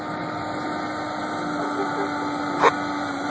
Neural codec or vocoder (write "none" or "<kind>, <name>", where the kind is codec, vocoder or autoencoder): none